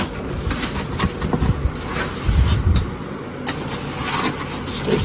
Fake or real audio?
real